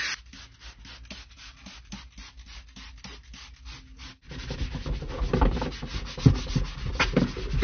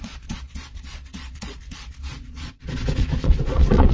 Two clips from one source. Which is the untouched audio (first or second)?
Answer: first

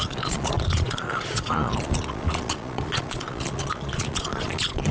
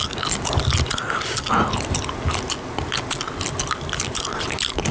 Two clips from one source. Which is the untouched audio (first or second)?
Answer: second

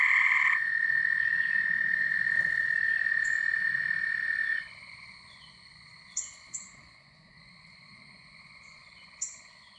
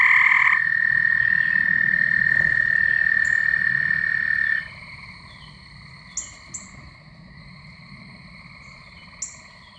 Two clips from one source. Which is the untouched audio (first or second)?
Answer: second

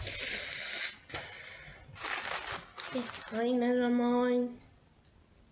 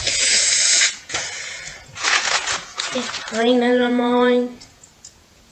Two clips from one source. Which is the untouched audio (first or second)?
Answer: first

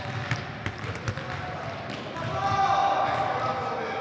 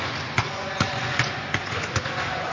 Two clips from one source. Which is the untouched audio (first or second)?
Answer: first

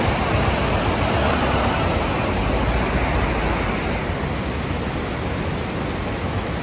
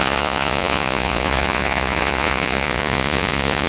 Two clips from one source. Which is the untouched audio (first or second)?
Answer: first